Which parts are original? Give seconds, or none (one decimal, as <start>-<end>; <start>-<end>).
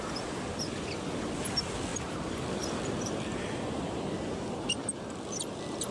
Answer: 0.0-5.9